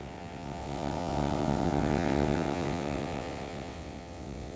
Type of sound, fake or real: fake